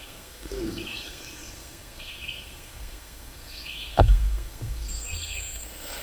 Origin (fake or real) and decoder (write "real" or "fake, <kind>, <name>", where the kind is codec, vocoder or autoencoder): fake, codec, SNAC